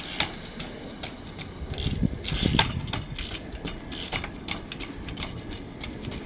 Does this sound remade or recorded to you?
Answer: recorded